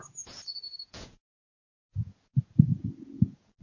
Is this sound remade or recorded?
remade